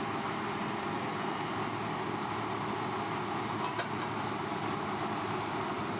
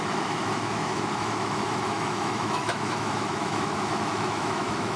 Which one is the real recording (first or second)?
first